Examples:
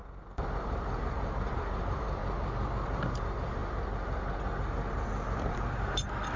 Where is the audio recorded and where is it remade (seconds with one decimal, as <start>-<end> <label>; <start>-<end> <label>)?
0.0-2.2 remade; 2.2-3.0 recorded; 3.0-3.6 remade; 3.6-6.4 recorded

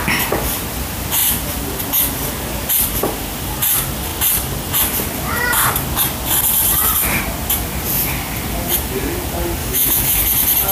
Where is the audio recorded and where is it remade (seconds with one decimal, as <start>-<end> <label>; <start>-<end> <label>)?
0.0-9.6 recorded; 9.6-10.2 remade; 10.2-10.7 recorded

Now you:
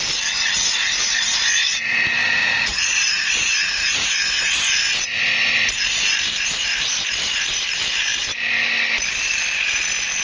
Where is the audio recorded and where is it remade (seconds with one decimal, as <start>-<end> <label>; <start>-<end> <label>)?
0.0-2.4 recorded; 2.4-4.6 remade; 4.6-10.2 recorded